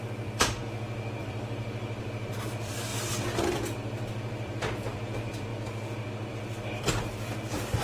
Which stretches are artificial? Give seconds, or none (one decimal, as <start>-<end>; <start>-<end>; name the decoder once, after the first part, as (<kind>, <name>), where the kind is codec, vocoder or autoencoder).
0.0-0.6 (vocoder, BigVGAN v2); 1.2-5.5; 6.3-7.8